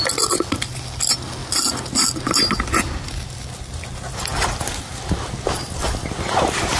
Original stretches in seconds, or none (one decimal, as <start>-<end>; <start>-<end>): 0.0-6.8